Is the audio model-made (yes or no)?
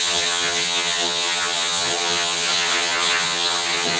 yes